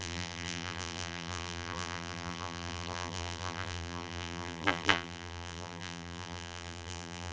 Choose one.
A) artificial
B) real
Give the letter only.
A